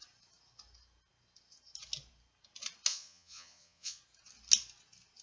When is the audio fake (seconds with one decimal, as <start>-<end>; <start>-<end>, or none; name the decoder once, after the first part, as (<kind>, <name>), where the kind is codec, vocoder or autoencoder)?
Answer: 2.9-4.0 (vocoder, Vocos)